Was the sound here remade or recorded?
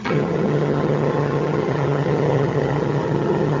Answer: remade